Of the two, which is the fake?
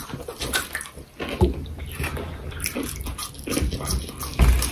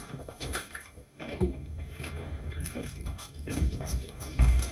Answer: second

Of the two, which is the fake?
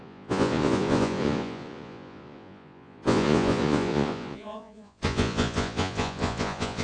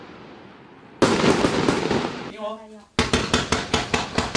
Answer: first